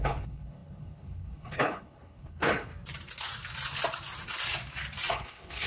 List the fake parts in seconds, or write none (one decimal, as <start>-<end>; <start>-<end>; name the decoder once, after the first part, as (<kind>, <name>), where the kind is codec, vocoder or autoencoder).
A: 0.0-2.7 (codec, HILCodec); 5.1-5.7